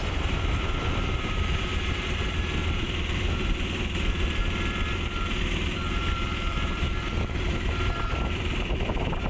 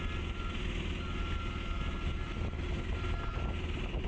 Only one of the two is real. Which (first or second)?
second